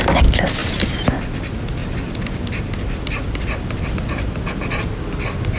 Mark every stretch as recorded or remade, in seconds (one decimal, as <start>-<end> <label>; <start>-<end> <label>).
0.0-5.6 recorded